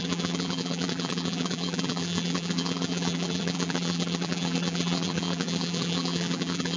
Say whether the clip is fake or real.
fake